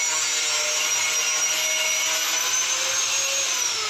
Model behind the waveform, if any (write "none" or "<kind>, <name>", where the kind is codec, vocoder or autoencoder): none